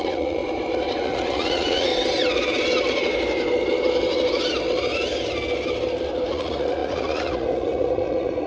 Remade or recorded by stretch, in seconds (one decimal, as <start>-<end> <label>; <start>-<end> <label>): 0.0-0.4 remade; 0.4-1.0 recorded; 1.0-1.9 remade; 1.9-6.3 recorded; 6.3-8.5 remade